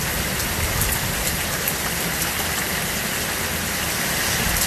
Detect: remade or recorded recorded